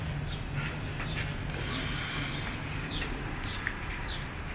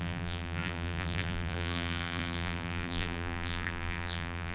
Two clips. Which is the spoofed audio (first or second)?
second